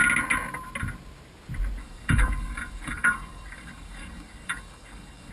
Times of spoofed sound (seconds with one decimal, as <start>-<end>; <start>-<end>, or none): 1.8-5.3